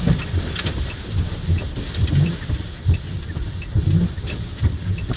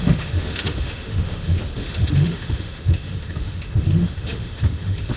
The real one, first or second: first